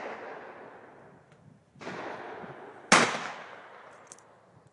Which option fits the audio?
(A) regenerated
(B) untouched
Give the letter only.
B